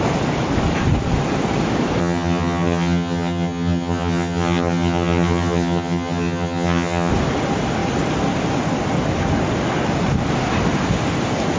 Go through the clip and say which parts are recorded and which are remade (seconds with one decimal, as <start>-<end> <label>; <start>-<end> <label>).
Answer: 0.0-2.0 recorded; 2.0-7.1 remade; 7.1-11.6 recorded